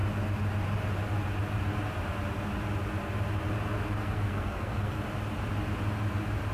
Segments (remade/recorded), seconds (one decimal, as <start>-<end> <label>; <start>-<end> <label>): 0.0-4.0 recorded; 4.0-5.0 remade; 5.0-6.5 recorded